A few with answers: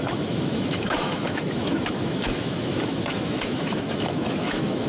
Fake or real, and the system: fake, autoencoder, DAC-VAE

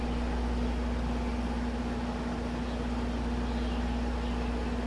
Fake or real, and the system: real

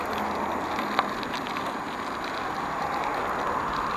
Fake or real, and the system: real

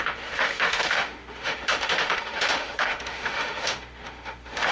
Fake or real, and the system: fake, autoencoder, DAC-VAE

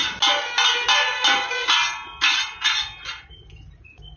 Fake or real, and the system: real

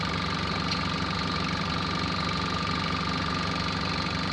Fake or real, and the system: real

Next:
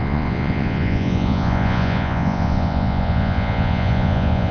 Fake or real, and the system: fake, vocoder, Vocos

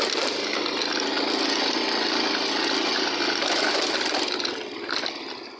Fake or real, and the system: real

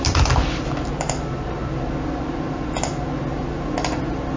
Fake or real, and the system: real